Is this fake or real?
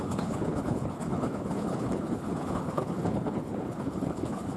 fake